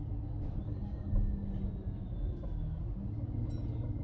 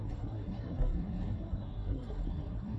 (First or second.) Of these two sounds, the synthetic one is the second